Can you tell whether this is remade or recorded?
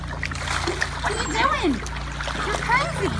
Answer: recorded